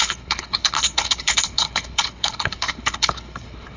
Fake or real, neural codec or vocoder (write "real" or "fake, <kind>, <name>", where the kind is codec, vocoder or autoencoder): fake, codec, HILCodec